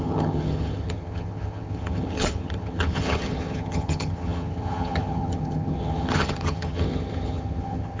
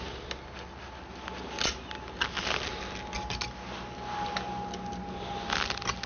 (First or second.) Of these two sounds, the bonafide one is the second